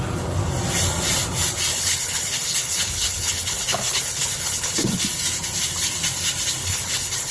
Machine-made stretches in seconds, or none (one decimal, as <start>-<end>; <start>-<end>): 1.7-5.0; 6.6-7.3

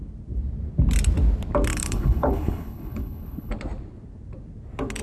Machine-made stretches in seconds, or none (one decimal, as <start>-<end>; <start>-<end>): 1.7-3.5